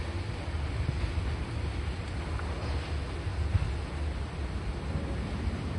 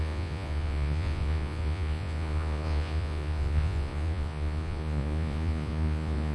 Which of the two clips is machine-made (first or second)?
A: second